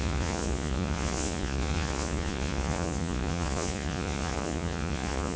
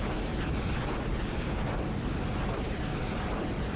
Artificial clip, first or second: first